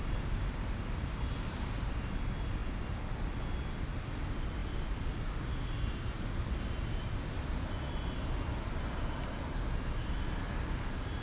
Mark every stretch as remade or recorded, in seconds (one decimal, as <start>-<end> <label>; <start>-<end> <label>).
0.0-11.2 recorded